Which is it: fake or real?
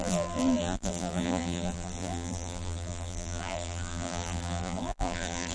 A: fake